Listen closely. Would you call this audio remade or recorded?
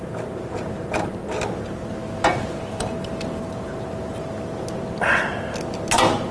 recorded